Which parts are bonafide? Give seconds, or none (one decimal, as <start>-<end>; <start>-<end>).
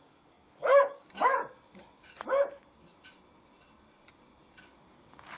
1.4-4.6